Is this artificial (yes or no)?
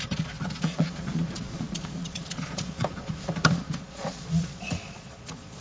yes